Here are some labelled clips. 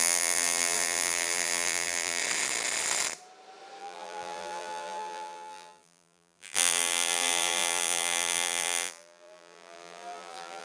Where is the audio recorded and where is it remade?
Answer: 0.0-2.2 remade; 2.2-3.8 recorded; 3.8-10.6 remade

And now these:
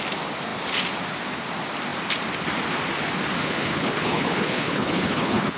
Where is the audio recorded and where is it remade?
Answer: 0.0-3.4 recorded; 3.4-5.6 remade

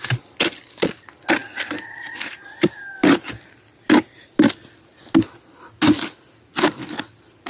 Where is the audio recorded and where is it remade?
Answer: 0.0-7.5 recorded

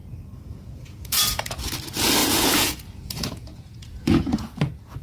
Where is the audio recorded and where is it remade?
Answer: 0.0-1.6 remade; 1.6-2.2 recorded; 2.2-4.6 remade; 4.6-5.0 recorded

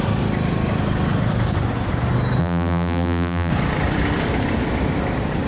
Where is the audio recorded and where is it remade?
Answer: 0.0-2.4 recorded; 2.4-3.5 remade; 3.5-5.5 recorded